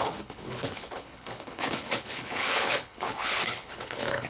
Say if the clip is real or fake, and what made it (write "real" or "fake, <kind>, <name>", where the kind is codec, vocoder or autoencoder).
fake, codec, HILCodec